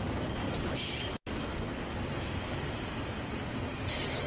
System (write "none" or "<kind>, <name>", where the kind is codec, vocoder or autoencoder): none